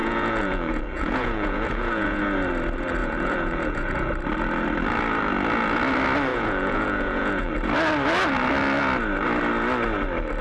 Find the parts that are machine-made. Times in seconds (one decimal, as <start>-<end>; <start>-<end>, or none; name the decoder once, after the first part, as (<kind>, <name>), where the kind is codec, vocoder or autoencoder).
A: 0.0-2.2 (vocoder, Vocos); 3.0-4.1; 6.3-7.5